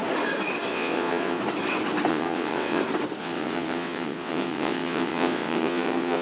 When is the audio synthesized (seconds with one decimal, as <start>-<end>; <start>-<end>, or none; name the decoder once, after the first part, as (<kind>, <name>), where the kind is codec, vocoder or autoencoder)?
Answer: 0.7-1.4 (vocoder, WaveNeXt); 2.1-2.8; 3.2-6.2